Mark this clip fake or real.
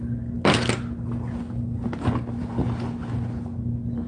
real